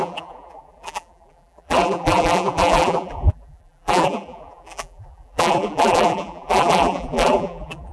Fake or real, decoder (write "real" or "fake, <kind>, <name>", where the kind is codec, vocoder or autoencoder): fake, vocoder, BigVGAN v2